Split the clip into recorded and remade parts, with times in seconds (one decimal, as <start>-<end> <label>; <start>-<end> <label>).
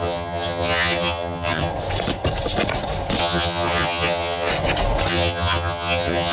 0.0-1.7 remade; 1.7-3.2 recorded; 3.2-4.5 remade; 4.5-5.1 recorded; 5.1-6.3 remade